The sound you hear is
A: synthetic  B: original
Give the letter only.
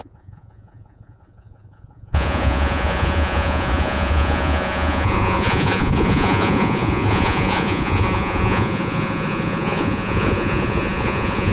A